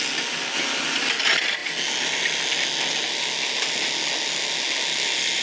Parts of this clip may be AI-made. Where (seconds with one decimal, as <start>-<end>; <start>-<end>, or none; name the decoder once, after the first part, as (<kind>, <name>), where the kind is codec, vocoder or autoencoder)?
none